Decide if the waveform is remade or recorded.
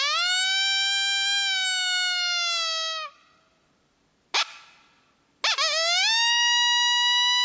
recorded